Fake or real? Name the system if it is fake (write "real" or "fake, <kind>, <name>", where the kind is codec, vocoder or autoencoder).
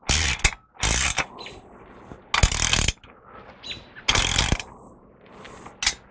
real